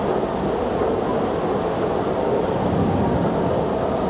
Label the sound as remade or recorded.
recorded